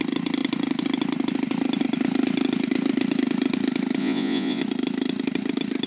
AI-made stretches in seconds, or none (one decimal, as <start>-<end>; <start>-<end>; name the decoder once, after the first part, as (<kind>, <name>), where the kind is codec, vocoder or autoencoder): 4.0-4.6 (vocoder, Vocos)